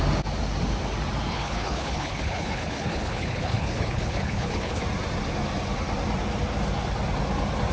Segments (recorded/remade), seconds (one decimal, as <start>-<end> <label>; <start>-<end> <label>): 0.0-1.3 recorded; 1.3-4.8 remade; 4.8-7.7 recorded